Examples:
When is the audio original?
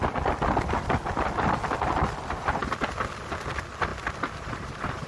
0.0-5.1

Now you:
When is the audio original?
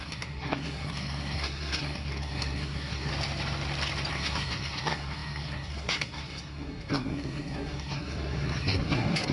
3.1-4.1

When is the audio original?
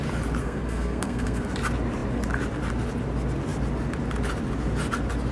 0.0-0.4; 1.4-5.3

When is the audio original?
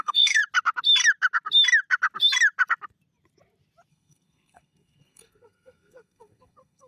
0.4-3.9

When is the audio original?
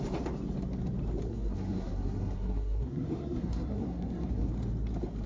0.0-1.3; 4.5-5.3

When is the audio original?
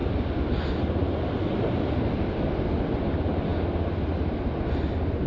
0.0-5.3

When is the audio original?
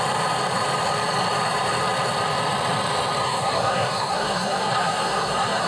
0.0-3.2